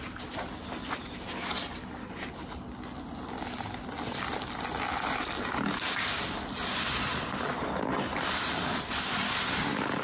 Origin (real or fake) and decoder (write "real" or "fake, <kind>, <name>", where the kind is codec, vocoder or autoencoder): real